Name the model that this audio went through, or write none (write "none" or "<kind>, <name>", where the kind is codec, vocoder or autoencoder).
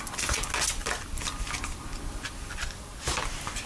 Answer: none